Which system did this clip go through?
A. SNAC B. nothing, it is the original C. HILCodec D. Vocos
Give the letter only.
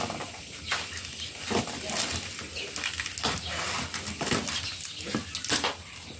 B